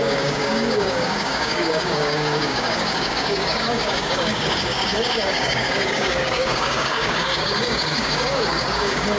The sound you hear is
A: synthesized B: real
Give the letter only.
A